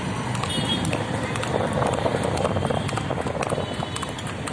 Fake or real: real